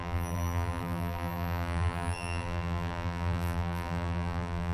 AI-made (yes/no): yes